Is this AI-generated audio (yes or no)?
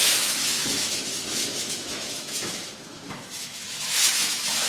yes